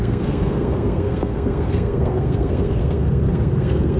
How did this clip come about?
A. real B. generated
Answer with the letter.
B